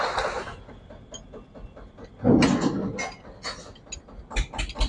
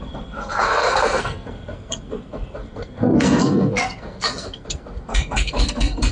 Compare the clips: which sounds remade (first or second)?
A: second